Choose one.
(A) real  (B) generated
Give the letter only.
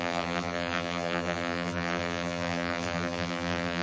B